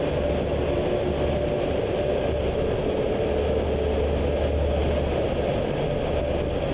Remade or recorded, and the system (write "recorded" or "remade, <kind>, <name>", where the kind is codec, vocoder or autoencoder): recorded